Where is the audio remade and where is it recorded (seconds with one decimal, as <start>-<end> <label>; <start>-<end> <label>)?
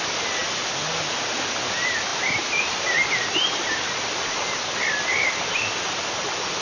0.0-6.6 recorded